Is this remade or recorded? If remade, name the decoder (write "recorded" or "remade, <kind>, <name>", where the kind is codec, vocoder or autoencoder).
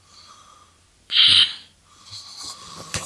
recorded